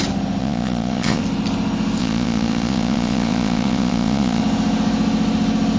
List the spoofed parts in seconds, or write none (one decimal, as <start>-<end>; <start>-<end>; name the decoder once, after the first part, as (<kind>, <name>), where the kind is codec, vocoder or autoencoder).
0.4-1.2 (vocoder, Vocos); 2.0-4.4